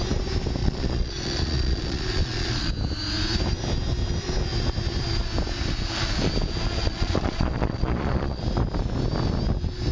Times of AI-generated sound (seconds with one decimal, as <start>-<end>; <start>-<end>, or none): 0.6-2.7; 6.8-8.4